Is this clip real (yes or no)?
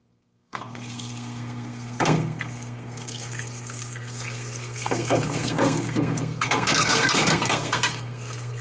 no